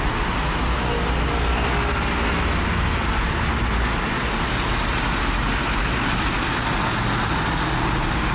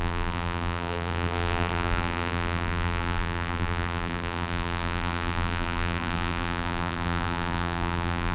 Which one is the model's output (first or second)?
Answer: second